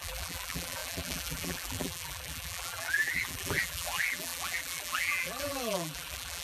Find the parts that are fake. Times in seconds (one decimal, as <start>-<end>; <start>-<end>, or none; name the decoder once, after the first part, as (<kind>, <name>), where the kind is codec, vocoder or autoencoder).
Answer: 0.0-6.4 (vocoder, BigVGAN v2)